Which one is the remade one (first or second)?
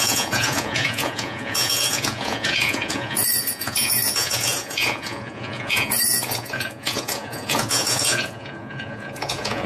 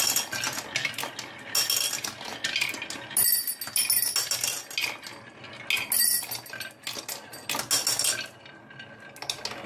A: first